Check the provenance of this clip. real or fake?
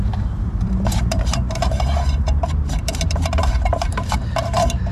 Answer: fake